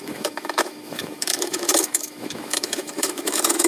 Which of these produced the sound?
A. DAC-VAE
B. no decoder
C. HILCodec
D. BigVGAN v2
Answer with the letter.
A